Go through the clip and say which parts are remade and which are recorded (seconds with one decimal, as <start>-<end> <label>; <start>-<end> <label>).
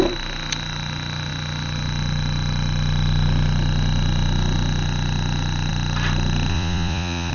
0.0-6.5 recorded; 6.5-7.3 remade